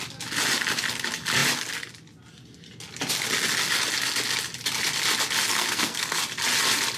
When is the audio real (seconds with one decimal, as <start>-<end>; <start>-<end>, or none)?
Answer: 0.0-5.5; 6.2-7.0